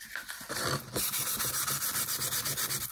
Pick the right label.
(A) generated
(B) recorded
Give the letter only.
B